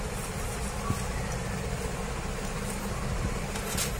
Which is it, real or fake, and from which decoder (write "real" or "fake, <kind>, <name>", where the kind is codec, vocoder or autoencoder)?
real